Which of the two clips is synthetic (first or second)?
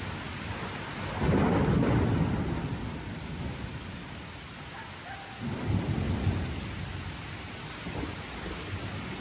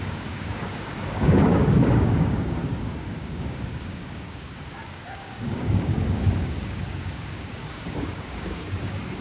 second